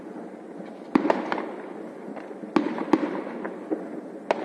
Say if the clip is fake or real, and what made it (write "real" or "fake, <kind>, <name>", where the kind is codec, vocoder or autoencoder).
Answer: real